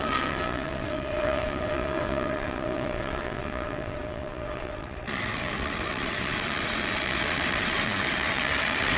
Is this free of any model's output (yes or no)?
no